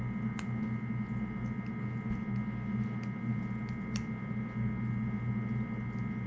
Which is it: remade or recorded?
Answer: recorded